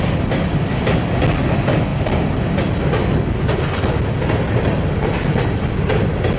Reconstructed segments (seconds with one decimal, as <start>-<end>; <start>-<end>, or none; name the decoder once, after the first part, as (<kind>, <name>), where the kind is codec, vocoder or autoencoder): none